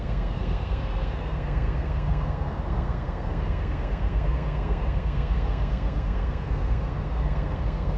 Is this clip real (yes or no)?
no